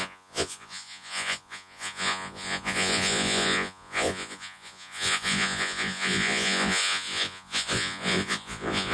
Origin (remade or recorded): remade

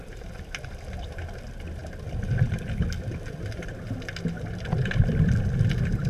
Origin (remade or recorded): recorded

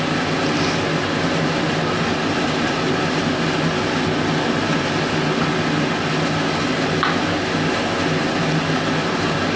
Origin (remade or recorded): recorded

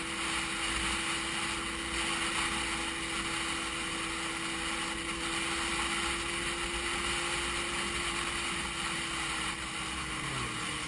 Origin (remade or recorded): recorded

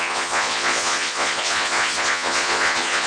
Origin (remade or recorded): remade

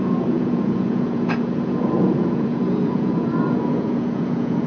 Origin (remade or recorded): remade